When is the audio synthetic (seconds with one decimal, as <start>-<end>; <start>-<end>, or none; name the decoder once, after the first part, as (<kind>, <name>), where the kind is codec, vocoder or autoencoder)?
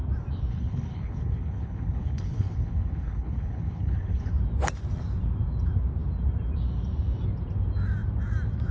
0.5-4.3 (codec, HILCodec)